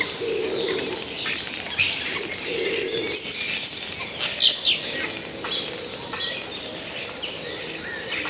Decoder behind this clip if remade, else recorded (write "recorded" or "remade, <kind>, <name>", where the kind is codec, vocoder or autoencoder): recorded